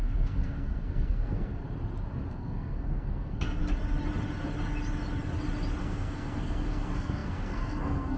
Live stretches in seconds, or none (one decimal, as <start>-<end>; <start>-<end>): 1.6-2.3; 3.6-5.8